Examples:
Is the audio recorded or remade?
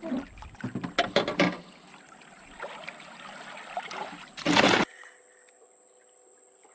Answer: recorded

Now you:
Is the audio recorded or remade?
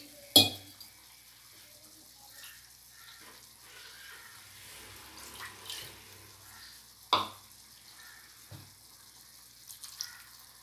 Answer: recorded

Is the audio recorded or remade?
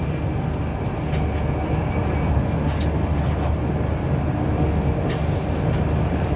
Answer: recorded